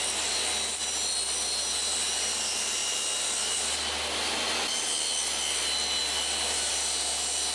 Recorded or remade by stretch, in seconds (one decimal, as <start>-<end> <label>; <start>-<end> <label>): 0.0-7.5 recorded

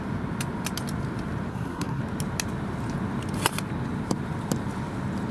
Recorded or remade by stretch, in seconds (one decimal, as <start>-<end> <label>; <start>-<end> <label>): 0.0-1.5 recorded; 1.5-2.0 remade; 2.0-5.3 recorded